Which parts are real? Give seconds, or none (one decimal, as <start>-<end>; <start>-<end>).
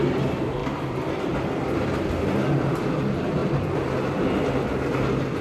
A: 0.0-0.6; 2.8-5.4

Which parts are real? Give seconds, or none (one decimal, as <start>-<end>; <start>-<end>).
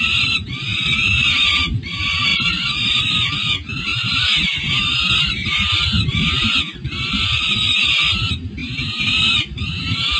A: 0.0-0.7; 1.5-3.9; 5.5-8.6